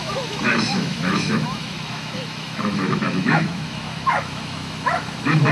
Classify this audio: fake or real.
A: fake